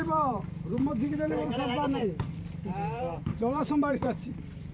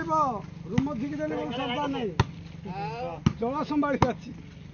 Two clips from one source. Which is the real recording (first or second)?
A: second